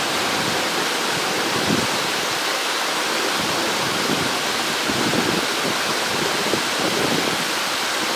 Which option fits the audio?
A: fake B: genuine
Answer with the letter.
B